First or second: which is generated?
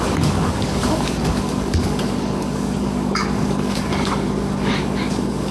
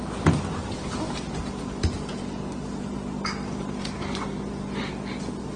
first